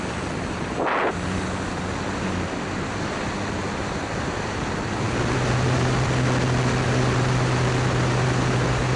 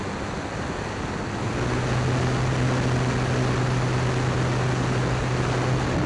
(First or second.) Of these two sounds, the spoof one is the first